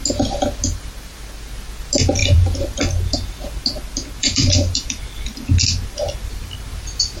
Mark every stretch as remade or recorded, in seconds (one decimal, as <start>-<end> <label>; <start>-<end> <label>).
0.0-2.2 recorded; 2.2-2.8 remade; 2.8-4.2 recorded; 4.2-5.0 remade; 5.0-7.2 recorded